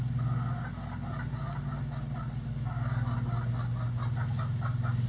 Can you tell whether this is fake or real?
real